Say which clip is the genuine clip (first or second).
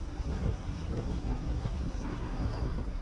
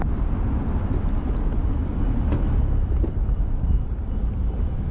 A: second